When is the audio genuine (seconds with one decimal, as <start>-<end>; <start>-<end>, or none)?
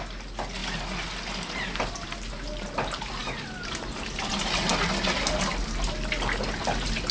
0.0-7.1